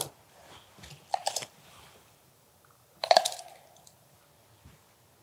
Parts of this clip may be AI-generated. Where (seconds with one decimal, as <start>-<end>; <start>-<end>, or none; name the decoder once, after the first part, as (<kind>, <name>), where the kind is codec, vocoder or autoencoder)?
1.2-4.2 (vocoder, BigVGAN v2)